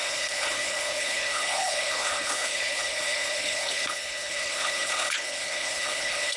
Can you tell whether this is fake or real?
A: fake